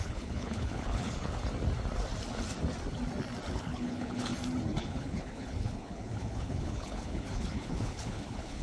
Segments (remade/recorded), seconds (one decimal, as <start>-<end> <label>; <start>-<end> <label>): 0.0-1.4 remade; 1.4-3.5 recorded; 3.5-4.3 remade; 4.3-4.8 recorded; 4.8-8.6 remade